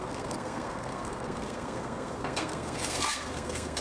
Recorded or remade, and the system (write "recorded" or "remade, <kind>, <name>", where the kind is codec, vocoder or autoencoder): remade, codec, SNAC